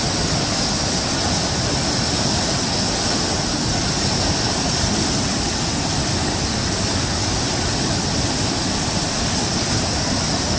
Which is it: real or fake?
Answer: real